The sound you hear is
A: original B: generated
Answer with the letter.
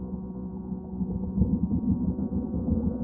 B